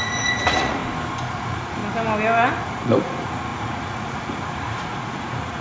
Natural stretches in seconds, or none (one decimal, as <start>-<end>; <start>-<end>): 0.8-1.3; 1.8-2.6

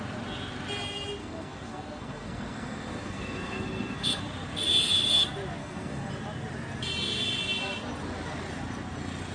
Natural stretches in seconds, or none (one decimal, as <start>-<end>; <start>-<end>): 0.0-1.2; 4.2-5.6; 6.1-9.3

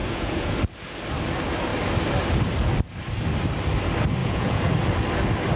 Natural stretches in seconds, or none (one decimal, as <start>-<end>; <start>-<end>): 0.6-4.2; 4.7-5.6